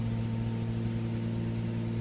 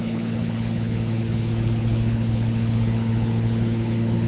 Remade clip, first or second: second